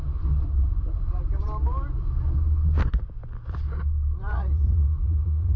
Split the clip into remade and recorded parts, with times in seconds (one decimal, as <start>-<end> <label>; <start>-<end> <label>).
0.0-4.3 recorded; 4.3-5.6 remade